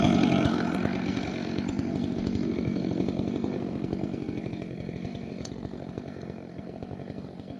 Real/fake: fake